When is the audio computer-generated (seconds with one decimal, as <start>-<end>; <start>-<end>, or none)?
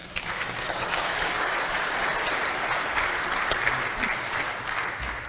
0.0-1.7